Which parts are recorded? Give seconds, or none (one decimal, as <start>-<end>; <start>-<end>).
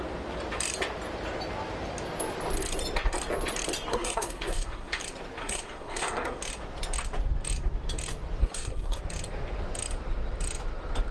0.0-3.9; 5.0-5.4; 6.4-8.4; 9.0-11.1